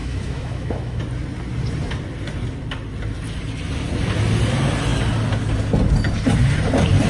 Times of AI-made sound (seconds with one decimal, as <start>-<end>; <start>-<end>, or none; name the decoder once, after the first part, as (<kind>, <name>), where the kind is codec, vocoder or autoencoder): 0.0-1.0 (autoencoder, DAC-VAE)